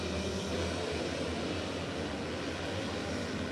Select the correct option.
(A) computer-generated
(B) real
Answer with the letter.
B